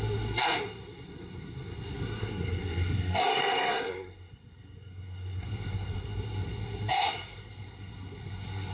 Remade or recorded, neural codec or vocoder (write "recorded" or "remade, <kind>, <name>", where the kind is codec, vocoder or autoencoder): remade, codec, SNAC